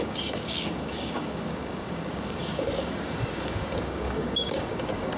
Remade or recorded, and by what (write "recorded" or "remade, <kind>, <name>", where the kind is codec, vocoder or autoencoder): remade, codec, DAC